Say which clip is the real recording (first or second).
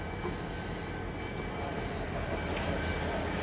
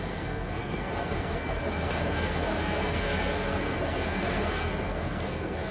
first